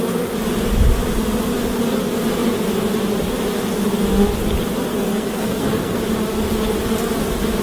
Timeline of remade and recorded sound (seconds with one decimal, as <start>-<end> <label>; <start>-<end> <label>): 0.0-4.9 recorded; 4.9-6.0 remade; 6.0-7.6 recorded